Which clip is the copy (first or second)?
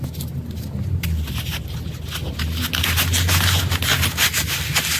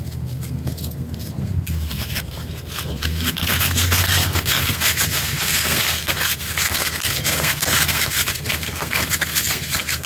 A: second